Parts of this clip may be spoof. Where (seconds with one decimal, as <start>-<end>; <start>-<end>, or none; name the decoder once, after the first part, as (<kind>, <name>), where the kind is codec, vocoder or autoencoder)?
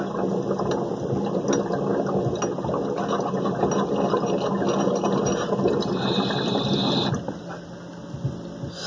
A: none